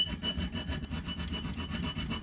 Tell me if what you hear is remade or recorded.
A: recorded